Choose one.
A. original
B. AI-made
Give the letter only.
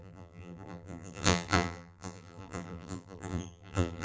B